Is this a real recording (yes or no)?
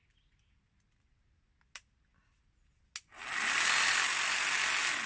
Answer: yes